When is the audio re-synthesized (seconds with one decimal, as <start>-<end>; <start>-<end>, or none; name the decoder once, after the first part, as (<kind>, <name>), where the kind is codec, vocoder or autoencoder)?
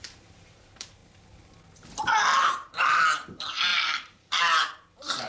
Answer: 0.0-1.0 (vocoder, BigVGAN v2); 2.4-5.3